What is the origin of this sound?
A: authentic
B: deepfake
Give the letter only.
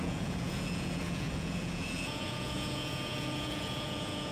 B